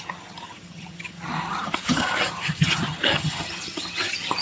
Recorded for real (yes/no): no